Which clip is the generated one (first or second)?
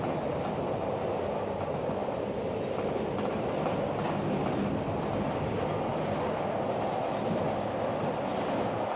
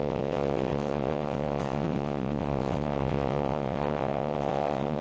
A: second